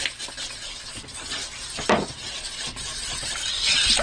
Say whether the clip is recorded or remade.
recorded